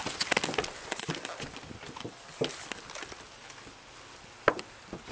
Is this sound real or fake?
real